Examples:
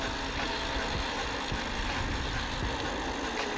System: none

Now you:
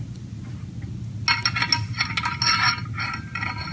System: none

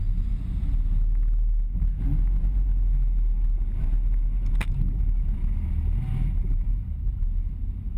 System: none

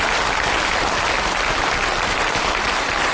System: none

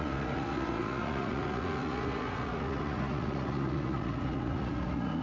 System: vocoder, Vocos